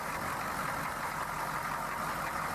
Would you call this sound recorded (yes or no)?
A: yes